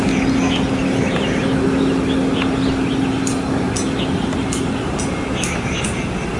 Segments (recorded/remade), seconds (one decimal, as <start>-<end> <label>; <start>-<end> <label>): 0.0-6.4 recorded